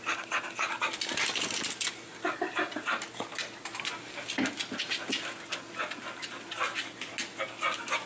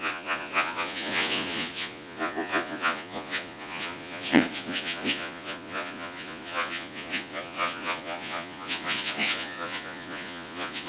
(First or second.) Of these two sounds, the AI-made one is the second